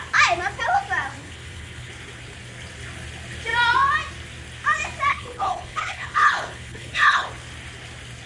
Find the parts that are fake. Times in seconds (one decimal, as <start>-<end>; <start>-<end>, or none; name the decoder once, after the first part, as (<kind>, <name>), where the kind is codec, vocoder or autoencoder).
1.2-1.9 (codec, HILCodec); 5.1-7.3